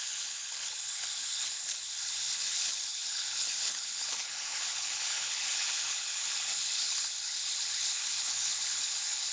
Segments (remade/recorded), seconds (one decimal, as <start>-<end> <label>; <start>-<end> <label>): 0.0-9.3 remade